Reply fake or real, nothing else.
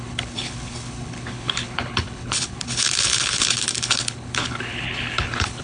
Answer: fake